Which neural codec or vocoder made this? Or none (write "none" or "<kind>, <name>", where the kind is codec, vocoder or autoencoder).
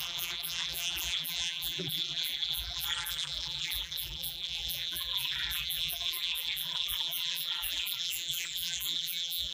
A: vocoder, BigVGAN v2